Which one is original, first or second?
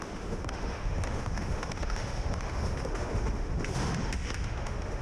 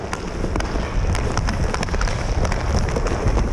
second